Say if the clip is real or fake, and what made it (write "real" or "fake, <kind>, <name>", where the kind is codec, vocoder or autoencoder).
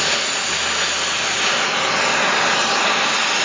real